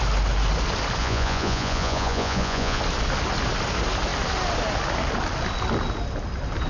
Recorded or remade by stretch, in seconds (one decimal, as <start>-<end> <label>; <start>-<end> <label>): 0.0-1.0 recorded; 1.0-2.8 remade; 2.8-6.7 recorded